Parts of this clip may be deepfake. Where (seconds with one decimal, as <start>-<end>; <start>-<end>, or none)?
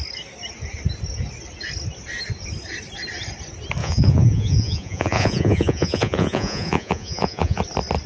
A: 3.8-7.6